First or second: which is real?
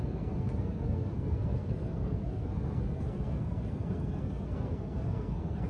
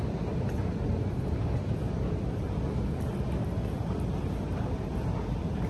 second